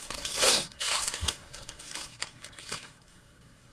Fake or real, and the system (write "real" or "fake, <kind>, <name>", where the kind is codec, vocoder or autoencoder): fake, codec, SNAC